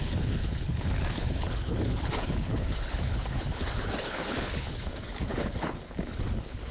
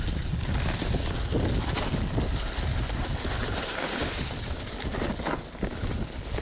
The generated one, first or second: first